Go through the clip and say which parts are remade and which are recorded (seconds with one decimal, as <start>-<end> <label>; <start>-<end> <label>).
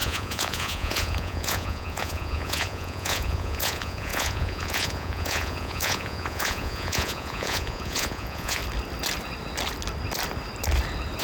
0.0-8.6 remade; 8.6-11.2 recorded